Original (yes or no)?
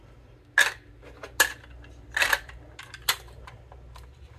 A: yes